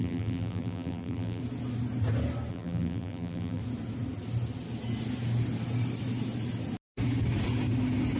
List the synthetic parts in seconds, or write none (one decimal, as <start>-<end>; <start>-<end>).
0.0-1.4; 2.5-3.6